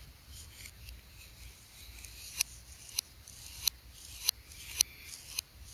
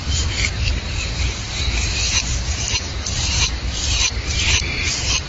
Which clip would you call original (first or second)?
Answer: first